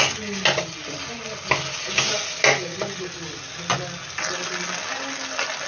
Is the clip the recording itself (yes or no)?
yes